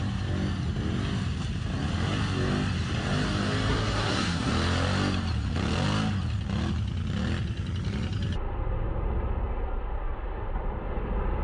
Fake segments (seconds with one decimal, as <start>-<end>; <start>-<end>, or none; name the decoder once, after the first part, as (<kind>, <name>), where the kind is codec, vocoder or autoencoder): 3.7-4.5 (codec, SNAC)